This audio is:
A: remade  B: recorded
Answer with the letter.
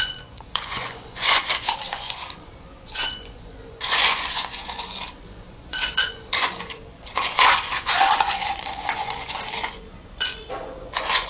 A